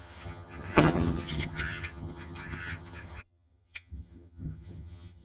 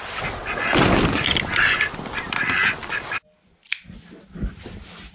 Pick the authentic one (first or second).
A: second